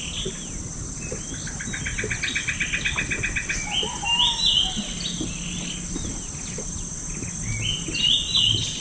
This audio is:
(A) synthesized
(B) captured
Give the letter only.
B